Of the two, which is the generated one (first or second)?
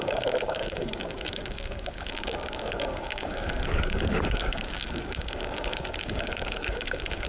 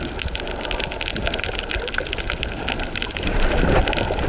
first